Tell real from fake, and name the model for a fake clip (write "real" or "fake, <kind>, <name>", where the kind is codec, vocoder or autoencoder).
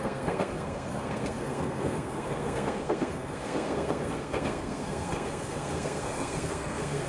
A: fake, codec, SNAC